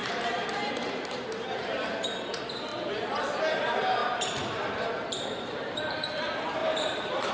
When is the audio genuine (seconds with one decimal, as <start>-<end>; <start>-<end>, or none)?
2.7-3.5